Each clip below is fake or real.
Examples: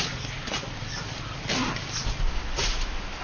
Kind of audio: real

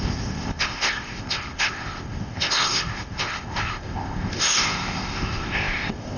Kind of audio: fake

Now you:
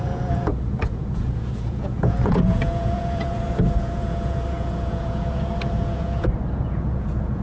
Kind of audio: fake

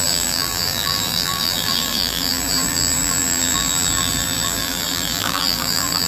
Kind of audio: fake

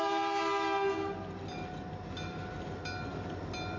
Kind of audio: real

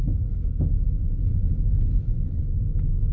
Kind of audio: real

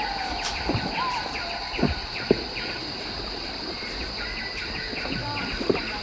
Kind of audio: real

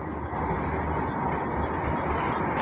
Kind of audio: real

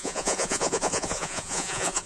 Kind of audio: fake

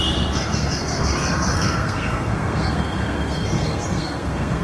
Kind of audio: fake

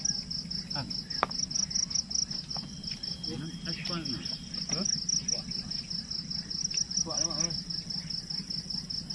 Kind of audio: real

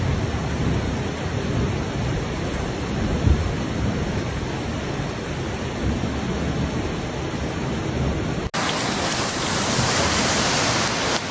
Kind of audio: real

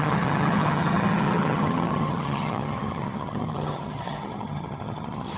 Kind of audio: fake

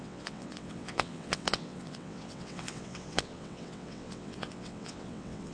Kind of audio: fake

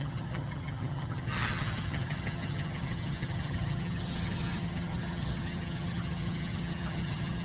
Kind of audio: fake